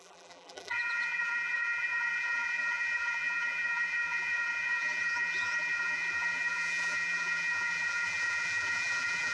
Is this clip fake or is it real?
fake